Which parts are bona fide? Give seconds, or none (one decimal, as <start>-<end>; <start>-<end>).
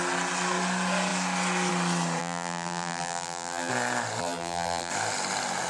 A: 0.0-2.2; 3.7-4.2; 4.9-5.7